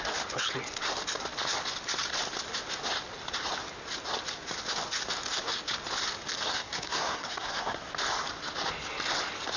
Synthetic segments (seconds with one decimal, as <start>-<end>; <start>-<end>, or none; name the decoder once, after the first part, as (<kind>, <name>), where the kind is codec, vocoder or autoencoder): 6.5-7.9 (codec, SNAC)